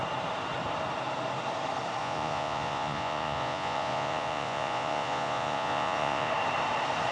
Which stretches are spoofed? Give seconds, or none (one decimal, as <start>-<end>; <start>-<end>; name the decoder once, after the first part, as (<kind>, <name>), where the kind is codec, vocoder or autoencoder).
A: 2.0-6.3 (vocoder, Vocos)